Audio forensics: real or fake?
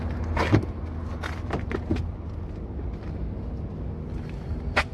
real